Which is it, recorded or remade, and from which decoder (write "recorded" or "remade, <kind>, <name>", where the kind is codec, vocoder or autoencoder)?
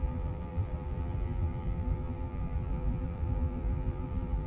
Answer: remade, vocoder, BigVGAN v2